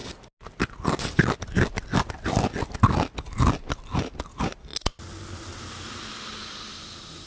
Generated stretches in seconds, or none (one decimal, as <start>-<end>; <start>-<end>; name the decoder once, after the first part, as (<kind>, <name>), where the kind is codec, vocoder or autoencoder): none